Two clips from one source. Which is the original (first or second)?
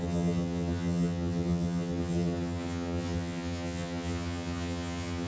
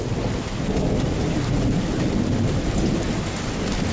second